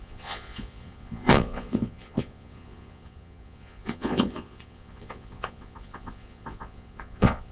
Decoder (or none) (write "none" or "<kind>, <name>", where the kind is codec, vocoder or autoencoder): vocoder, Vocos